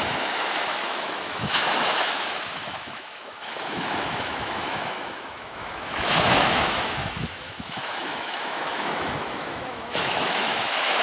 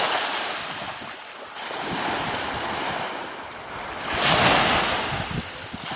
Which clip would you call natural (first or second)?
second